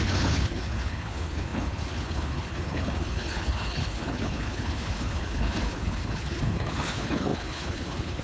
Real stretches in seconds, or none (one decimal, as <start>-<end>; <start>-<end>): none